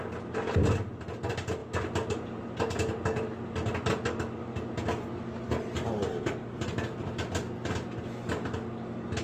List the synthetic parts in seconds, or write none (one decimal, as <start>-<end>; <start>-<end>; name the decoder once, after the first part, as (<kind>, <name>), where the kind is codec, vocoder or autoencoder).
none